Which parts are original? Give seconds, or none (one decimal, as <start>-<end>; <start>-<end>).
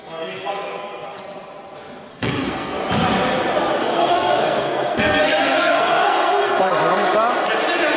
1.2-2.1; 2.8-3.8; 6.7-8.0